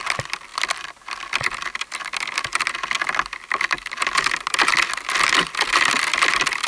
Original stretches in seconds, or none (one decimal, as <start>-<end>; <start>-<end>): 0.0-6.7